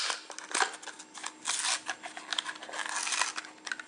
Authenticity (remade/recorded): recorded